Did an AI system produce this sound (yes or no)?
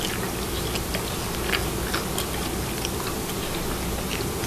no